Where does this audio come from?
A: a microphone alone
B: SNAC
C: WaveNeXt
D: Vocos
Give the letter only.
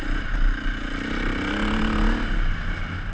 A